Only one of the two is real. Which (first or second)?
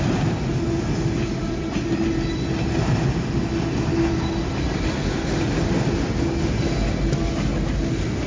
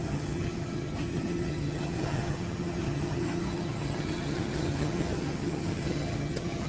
first